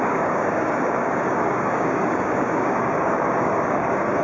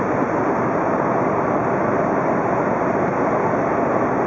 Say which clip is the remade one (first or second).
first